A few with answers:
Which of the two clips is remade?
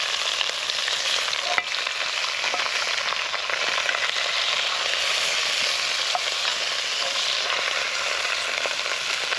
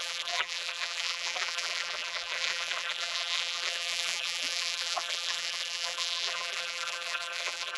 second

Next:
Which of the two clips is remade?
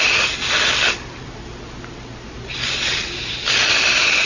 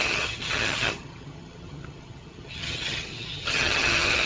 second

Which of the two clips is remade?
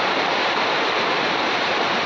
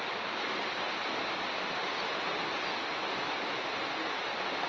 first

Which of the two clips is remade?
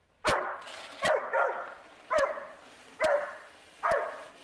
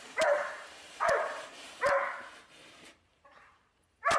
second